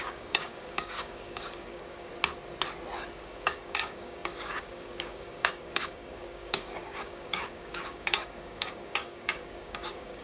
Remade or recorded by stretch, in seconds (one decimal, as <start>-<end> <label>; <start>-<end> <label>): 0.0-2.1 remade; 2.1-3.1 recorded; 3.1-10.2 remade